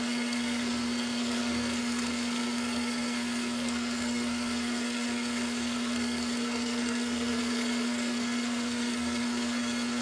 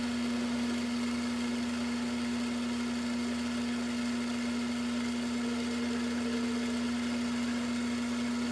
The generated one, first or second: first